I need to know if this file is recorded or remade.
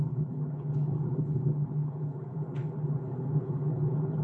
remade